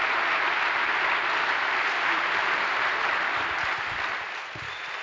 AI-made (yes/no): no